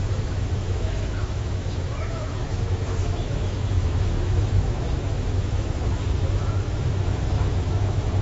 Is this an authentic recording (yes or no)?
no